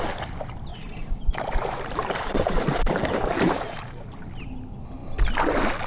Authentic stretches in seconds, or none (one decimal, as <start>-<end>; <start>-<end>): 0.0-0.7; 4.2-5.9